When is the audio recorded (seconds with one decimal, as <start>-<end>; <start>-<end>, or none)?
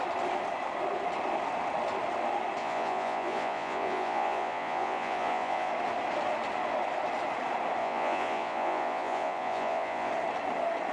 0.0-2.6; 5.7-7.8; 10.1-10.9